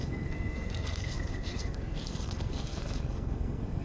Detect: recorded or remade remade